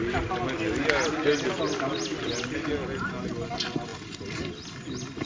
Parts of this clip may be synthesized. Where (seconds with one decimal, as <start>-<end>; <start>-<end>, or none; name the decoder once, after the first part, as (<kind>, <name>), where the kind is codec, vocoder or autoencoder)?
none